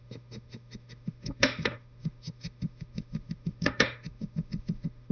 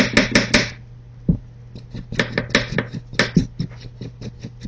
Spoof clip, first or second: first